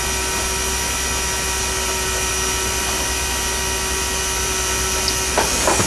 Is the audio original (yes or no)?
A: yes